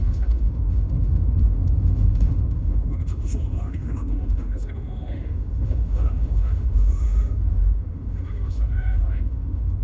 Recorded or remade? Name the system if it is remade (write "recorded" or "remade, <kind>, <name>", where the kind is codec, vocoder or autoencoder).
remade, autoencoder, DAC-VAE